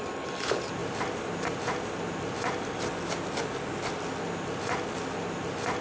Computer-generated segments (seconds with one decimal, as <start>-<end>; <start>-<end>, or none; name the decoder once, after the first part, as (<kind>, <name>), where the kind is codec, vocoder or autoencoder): none